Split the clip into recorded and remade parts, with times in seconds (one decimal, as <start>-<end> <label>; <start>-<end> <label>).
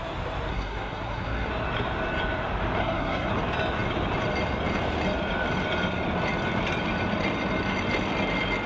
0.0-0.5 recorded; 0.5-1.5 remade; 1.5-2.8 recorded; 2.8-3.3 remade; 3.3-8.7 recorded